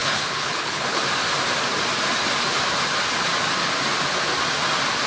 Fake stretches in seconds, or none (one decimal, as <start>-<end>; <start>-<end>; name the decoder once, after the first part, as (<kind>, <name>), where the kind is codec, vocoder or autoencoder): 0.0-1.0 (codec, HILCodec)